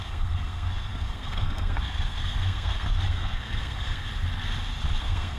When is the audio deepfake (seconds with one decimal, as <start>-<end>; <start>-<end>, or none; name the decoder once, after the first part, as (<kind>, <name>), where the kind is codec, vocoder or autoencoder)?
0.0-4.1 (codec, SNAC); 5.0-5.4